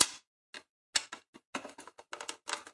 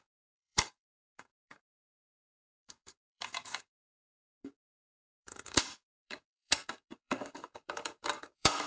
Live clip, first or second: first